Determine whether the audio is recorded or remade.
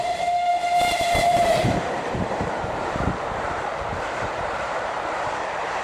remade